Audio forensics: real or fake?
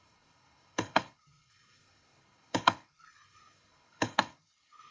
fake